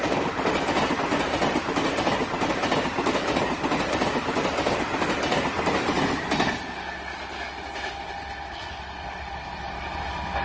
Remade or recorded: recorded